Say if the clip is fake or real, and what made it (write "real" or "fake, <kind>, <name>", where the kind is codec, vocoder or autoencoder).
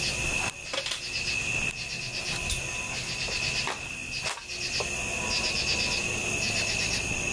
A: real